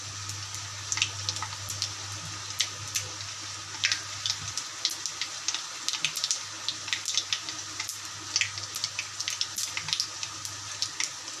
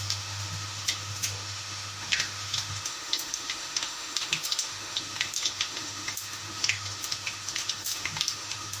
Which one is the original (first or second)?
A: first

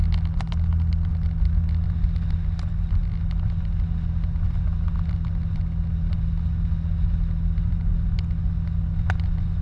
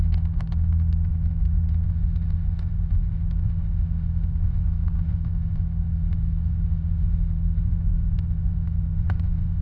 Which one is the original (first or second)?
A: first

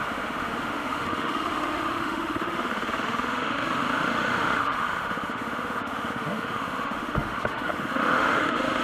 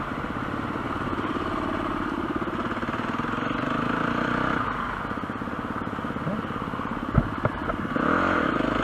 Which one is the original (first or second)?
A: second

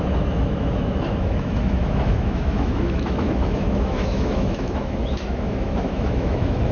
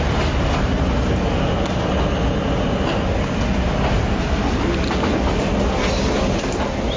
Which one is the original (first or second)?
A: second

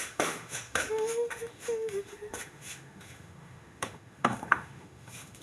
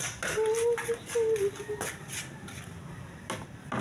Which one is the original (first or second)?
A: second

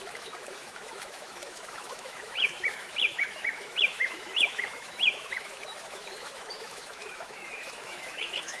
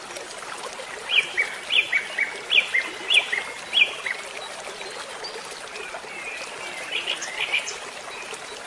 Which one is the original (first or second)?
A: second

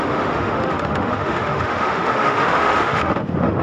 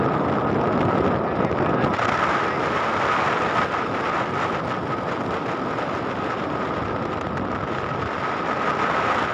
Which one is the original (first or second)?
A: second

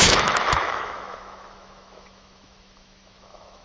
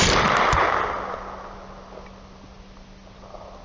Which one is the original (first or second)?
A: second